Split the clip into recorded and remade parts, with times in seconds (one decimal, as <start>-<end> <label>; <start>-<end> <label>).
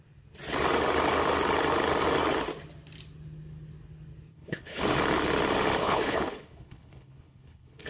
0.0-4.3 recorded; 4.3-4.8 remade; 4.8-5.8 recorded; 5.8-7.9 remade